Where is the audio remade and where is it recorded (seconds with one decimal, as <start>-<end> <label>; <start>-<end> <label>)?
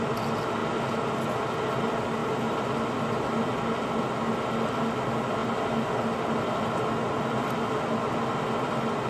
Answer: 0.0-9.1 recorded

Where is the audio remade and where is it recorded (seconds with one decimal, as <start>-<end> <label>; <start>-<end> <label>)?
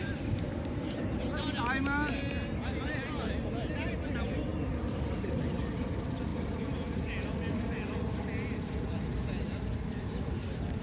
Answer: 0.0-10.8 recorded